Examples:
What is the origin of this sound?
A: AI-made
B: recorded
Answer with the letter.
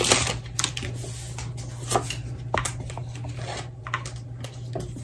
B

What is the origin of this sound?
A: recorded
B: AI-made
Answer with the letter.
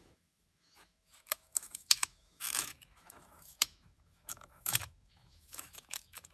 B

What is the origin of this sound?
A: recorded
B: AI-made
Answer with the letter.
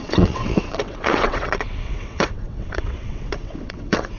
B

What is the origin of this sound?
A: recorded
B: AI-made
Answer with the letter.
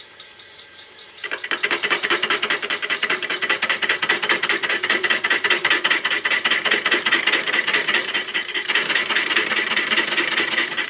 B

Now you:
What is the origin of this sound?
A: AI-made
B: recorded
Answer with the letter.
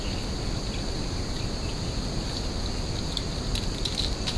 B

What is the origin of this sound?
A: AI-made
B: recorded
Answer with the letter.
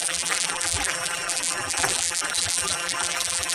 A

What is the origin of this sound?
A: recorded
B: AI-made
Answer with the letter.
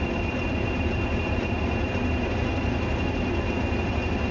A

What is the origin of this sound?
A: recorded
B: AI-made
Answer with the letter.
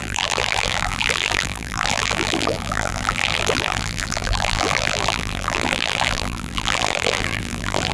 B